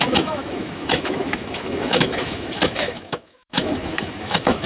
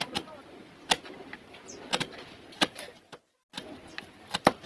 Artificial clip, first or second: first